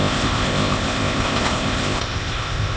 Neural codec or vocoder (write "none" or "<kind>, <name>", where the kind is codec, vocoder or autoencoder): codec, ZipCodec